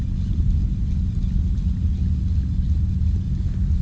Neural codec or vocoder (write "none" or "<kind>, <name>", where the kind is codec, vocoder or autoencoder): none